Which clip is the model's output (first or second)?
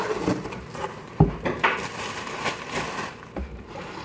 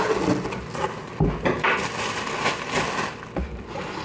first